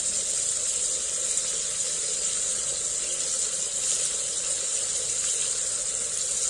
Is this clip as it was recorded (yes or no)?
yes